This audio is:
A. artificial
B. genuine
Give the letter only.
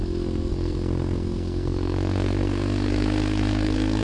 A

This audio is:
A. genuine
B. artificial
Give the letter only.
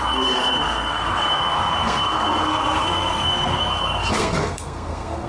B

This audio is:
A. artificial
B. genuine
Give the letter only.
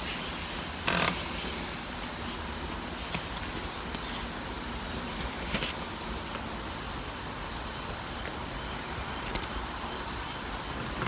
B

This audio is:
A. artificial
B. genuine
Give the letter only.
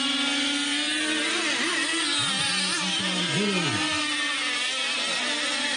B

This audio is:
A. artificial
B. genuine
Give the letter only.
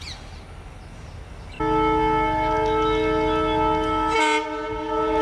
B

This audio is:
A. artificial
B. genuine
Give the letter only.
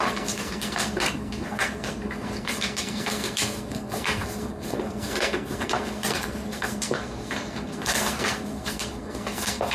A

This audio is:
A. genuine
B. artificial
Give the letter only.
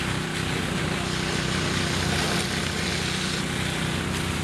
A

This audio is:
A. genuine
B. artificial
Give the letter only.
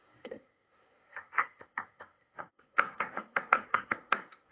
B